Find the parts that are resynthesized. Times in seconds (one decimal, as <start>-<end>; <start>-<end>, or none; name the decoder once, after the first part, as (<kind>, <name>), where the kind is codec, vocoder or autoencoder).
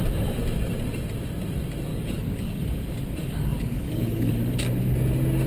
1.9-2.6 (codec, DAC); 3.2-4.3